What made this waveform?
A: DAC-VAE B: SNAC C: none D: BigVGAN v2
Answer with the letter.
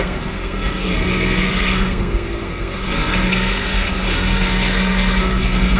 B